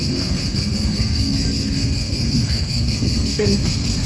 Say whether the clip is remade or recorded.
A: remade